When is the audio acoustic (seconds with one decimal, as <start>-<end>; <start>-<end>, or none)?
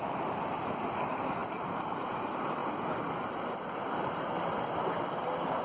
0.0-5.6